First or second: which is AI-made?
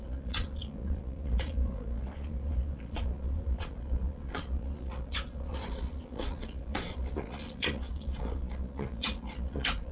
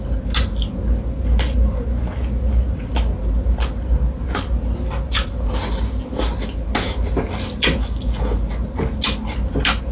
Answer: first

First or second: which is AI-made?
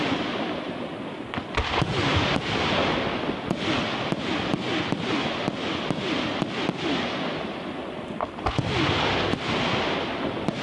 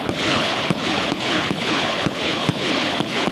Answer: second